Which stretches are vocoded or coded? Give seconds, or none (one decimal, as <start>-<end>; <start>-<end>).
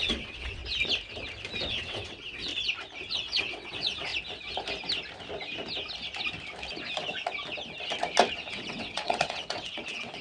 0.0-0.6; 1.7-2.5; 3.1-4.1; 8.5-10.2